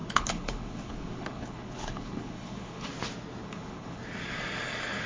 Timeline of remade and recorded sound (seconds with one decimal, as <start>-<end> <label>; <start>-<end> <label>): 0.0-2.9 remade; 2.9-3.4 recorded; 3.4-4.0 remade; 4.0-5.1 recorded